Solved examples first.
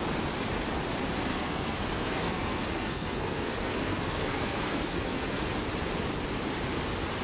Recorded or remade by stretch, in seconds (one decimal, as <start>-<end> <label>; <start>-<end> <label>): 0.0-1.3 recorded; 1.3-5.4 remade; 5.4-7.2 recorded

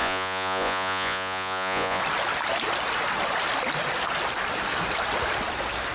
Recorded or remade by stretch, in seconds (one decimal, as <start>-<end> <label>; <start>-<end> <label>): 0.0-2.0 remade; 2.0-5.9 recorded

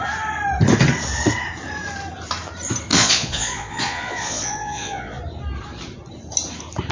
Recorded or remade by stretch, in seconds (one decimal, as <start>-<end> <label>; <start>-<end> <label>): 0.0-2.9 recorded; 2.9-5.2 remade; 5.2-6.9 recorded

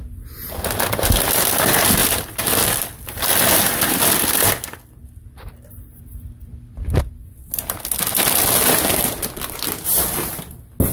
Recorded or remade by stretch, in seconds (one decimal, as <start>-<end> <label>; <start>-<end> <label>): 0.0-2.0 recorded; 2.0-4.5 remade; 4.5-10.9 recorded